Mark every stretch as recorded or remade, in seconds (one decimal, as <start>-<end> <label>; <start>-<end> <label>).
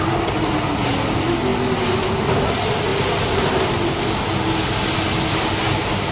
0.0-6.1 recorded